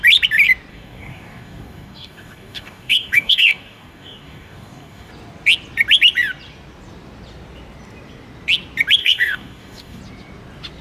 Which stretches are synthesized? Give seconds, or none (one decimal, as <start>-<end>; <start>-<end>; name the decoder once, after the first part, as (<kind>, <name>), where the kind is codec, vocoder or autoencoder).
0.7-5.1 (codec, DAC); 9.0-10.0